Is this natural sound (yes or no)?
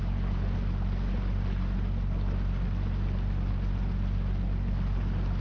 yes